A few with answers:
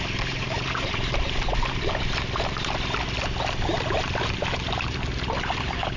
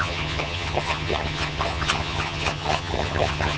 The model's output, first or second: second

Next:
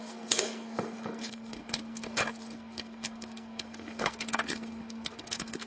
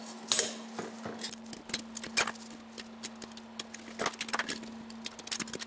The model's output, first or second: first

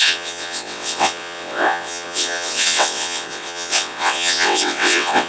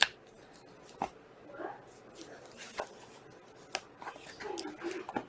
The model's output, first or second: first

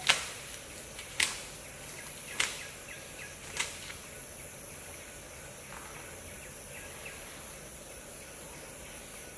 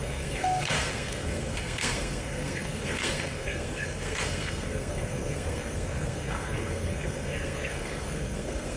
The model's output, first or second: second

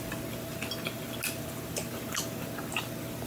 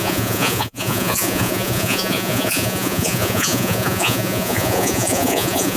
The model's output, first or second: second